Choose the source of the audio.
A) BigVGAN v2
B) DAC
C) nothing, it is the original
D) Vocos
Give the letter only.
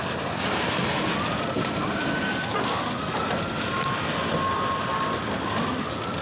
C